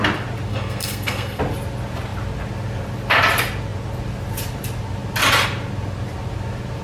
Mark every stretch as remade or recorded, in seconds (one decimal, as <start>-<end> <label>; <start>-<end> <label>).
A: 0.0-0.5 recorded; 0.5-1.4 remade; 1.4-6.8 recorded